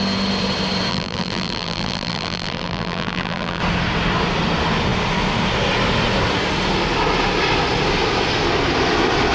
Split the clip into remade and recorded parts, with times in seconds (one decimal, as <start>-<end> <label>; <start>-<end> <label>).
0.0-0.9 recorded; 0.9-3.6 remade; 3.6-9.3 recorded